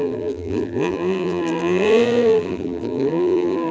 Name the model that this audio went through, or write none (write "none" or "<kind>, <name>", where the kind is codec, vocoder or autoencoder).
vocoder, BigVGAN v2